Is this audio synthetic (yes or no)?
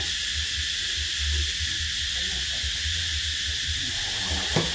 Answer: no